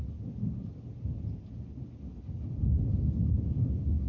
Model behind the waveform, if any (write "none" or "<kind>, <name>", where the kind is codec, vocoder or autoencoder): none